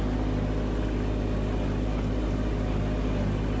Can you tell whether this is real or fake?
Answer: real